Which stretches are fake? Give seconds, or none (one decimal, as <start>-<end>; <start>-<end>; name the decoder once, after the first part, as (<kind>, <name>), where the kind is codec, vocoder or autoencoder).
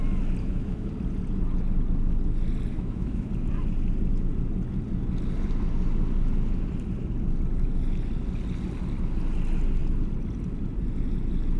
0.4-0.9 (autoencoder, DAC-VAE); 2.7-3.3